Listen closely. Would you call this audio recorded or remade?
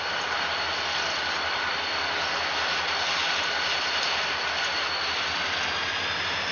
recorded